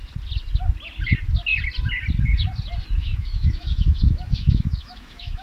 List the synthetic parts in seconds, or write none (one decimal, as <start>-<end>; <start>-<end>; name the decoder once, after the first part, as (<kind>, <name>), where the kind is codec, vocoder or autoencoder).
3.0-5.4 (autoencoder, DAC-VAE)

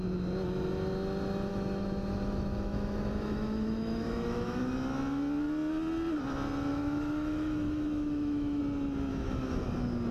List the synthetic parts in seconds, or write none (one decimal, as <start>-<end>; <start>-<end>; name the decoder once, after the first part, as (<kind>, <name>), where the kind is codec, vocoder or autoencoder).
1.5-4.6 (autoencoder, DAC-VAE); 6.7-8.6; 9.1-9.7